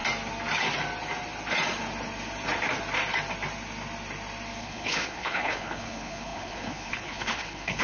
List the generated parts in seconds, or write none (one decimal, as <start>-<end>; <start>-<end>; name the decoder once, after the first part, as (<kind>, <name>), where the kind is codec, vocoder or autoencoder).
4.6-7.8 (codec, HILCodec)